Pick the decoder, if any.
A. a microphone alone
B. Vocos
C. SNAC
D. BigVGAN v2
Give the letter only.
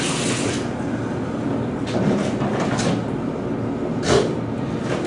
A